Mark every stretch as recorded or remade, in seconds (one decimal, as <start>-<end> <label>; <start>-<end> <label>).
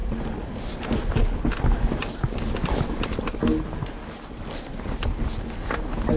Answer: 0.0-6.2 recorded